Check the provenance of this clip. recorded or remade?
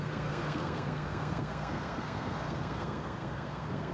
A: remade